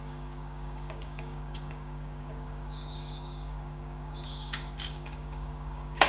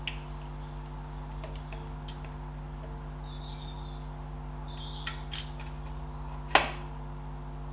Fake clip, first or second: first